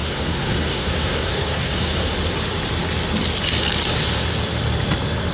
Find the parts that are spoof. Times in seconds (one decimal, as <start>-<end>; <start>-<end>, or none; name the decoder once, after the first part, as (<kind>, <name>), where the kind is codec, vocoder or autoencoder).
0.0-2.1 (codec, SNAC)